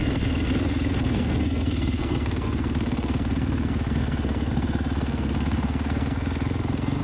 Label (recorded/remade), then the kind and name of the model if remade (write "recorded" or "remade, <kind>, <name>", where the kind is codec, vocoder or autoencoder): remade, codec, SNAC